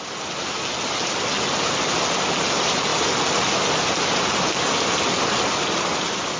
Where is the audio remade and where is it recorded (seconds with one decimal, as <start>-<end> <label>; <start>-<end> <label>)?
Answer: 0.0-6.4 recorded